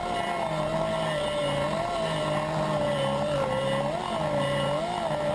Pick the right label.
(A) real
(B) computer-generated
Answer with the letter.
A